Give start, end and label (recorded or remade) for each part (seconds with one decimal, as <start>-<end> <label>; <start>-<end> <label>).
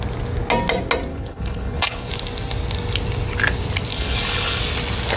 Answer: 0.0-1.1 recorded; 1.1-2.1 remade; 2.1-3.9 recorded; 3.9-4.6 remade; 4.6-5.2 recorded